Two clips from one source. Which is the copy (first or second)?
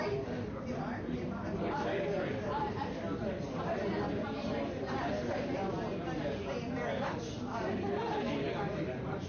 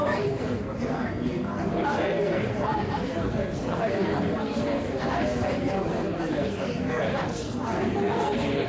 second